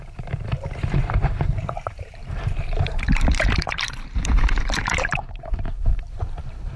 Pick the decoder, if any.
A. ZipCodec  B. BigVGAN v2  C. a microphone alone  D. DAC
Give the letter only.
B